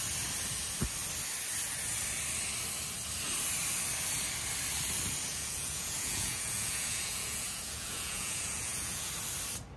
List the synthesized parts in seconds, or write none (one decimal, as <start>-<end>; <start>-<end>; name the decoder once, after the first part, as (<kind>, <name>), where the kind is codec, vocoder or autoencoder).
5.3-9.1 (vocoder, Vocos)